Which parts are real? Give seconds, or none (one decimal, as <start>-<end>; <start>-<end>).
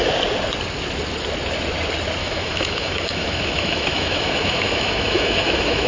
0.0-2.2